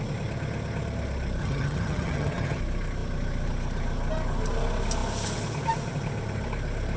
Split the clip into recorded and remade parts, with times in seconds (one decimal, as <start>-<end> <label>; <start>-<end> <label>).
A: 0.0-1.4 recorded; 1.4-2.6 remade; 2.6-7.0 recorded